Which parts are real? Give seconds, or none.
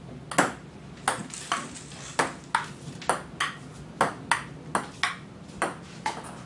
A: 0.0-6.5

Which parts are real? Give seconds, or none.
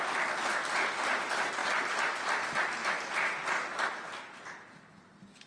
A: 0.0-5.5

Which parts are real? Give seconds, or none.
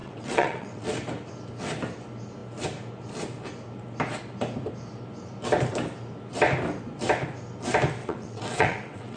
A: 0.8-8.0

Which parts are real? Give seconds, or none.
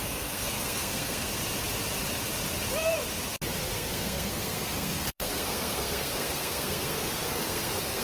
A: 1.4-3.6